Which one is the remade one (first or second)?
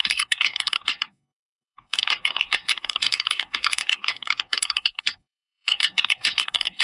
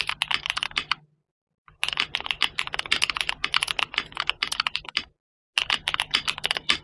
first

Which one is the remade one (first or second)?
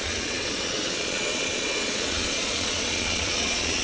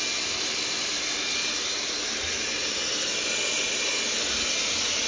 first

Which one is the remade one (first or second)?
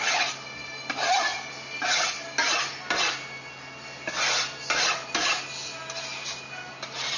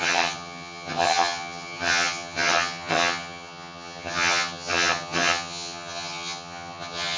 second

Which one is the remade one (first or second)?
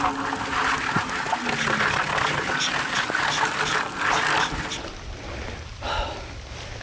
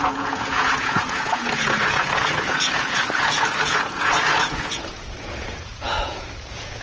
second